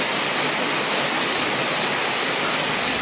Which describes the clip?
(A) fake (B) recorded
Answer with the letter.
B